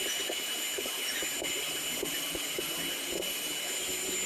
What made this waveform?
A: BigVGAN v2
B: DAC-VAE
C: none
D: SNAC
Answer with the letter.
C